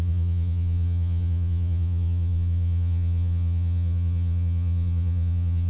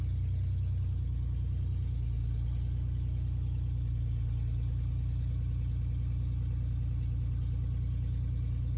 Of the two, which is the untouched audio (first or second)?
second